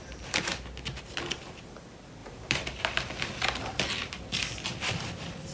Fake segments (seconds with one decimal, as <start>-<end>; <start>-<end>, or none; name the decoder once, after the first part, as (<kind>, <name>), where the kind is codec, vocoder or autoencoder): 0.0-0.5 (vocoder, BigVGAN v2); 1.1-5.5